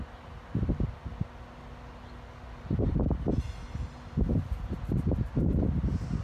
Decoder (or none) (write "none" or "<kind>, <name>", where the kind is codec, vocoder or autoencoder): none